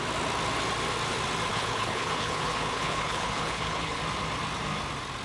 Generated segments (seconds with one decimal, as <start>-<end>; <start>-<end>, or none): 1.5-4.0